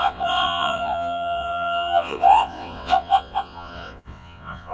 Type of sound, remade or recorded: remade